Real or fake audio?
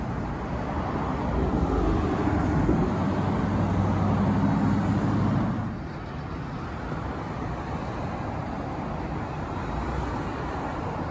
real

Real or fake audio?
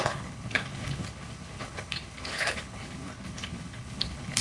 fake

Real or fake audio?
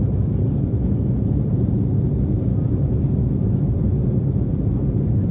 fake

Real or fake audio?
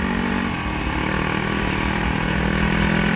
real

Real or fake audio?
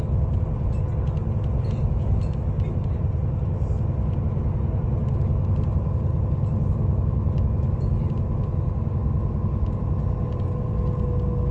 real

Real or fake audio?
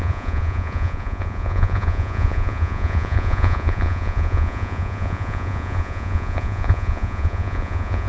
fake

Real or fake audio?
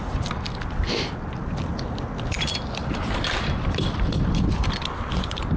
real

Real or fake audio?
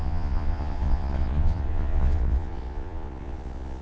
fake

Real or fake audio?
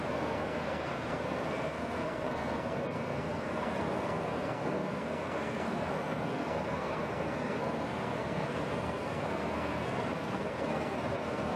fake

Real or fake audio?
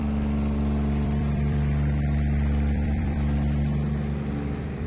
fake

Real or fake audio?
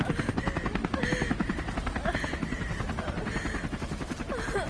real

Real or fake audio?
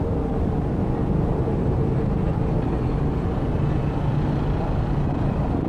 real